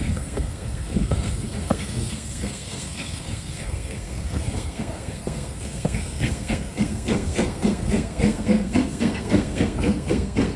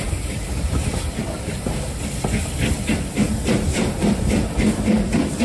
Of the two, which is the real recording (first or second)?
second